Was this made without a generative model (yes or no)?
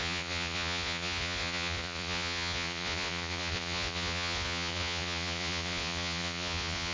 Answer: no